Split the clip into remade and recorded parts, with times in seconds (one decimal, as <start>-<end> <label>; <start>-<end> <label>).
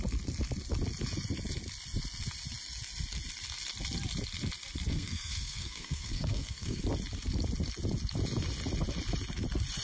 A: 0.0-4.9 recorded; 4.9-6.8 remade; 6.8-9.8 recorded